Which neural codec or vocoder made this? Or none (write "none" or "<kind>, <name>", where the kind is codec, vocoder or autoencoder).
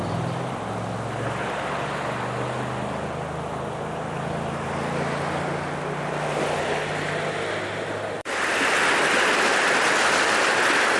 none